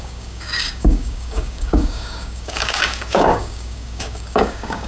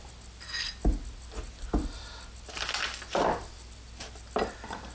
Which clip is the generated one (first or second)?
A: first